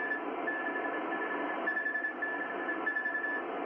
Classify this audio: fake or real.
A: real